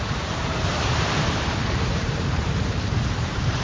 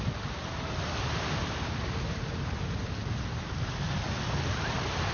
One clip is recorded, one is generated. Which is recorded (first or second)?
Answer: second